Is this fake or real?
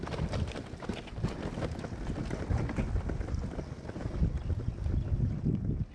real